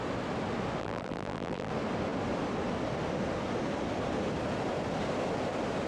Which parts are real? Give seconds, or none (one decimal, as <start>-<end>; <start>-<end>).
0.0-0.8; 1.7-5.9

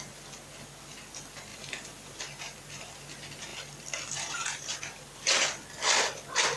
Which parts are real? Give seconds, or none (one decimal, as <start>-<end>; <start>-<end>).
0.0-1.5; 2.2-3.5; 5.0-6.6

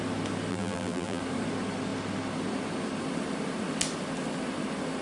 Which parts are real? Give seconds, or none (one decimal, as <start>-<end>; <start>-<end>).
0.0-0.5; 1.2-5.0

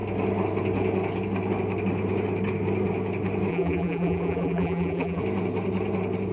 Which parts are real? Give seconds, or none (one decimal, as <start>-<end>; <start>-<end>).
0.0-3.5; 5.2-6.3

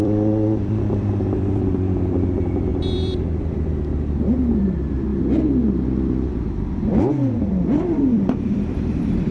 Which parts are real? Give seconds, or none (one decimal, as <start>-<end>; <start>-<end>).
5.1-7.4

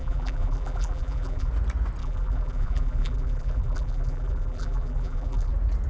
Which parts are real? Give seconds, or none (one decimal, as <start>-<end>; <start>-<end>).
1.5-2.0; 5.5-5.9

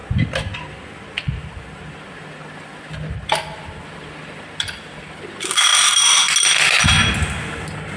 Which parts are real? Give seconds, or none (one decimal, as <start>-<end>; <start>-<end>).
0.0-4.8; 5.7-7.6

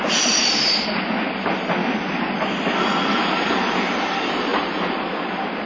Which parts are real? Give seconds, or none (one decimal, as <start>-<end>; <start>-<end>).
1.8-3.1